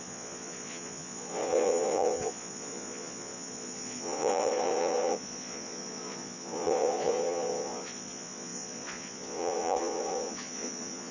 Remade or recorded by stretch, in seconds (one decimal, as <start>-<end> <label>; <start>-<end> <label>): 0.0-11.1 remade